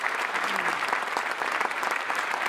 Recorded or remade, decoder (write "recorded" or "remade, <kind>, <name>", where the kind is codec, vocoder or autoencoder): remade, vocoder, BigVGAN v2